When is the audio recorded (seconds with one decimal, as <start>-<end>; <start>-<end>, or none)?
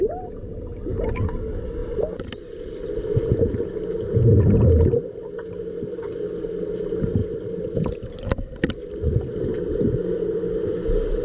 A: 0.0-11.2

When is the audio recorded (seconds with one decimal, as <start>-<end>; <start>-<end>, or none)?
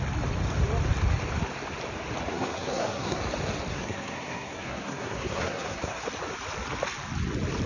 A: 0.0-2.3; 3.2-3.7; 6.0-7.7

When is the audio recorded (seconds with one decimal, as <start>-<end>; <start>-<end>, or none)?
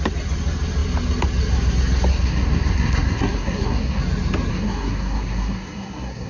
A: 0.0-2.1; 4.0-4.5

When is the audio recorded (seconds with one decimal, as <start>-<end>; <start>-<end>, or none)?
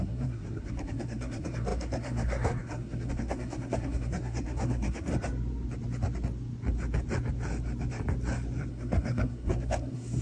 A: 5.1-8.7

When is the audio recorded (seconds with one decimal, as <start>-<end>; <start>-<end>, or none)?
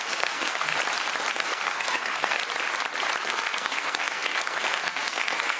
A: 0.7-1.3; 2.4-3.2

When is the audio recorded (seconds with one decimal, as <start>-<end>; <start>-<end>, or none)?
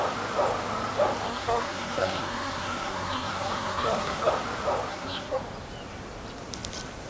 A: 0.0-1.3; 4.3-4.9; 5.4-7.1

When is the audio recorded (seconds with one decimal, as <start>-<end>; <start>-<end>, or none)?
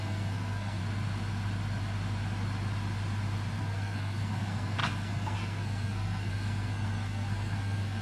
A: 0.8-3.6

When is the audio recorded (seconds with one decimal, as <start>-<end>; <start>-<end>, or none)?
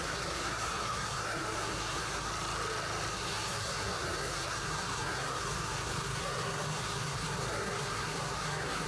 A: 2.3-3.1